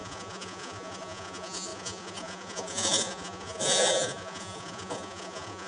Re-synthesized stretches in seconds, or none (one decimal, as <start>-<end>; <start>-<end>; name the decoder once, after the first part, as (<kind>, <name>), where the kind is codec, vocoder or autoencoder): 0.0-5.7 (vocoder, Vocos)